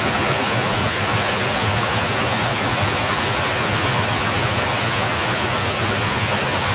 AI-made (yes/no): yes